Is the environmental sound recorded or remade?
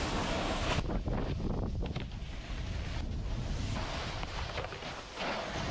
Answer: recorded